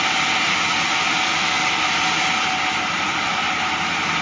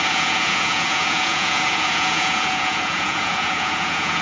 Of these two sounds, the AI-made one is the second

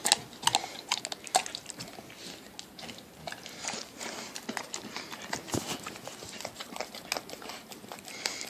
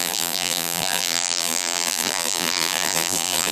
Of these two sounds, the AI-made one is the second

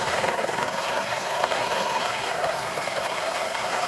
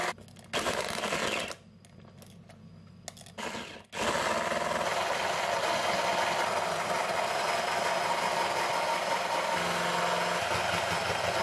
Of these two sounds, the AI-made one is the first